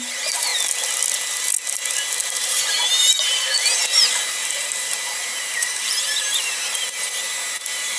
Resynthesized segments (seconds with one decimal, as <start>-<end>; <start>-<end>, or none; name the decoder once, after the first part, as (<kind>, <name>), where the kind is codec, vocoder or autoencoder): 0.0-0.5 (vocoder, BigVGAN v2); 2.4-8.0